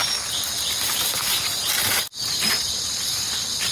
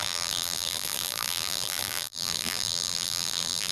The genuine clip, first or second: first